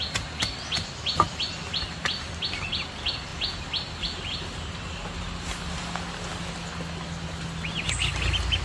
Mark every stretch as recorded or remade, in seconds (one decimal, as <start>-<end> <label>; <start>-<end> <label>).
0.0-8.6 recorded